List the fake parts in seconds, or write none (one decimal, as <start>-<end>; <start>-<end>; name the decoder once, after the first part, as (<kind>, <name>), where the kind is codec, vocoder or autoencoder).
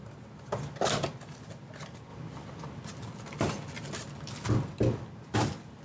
none